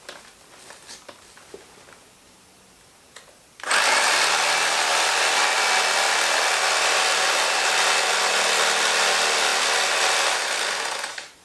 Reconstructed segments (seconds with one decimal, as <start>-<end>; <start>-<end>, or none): none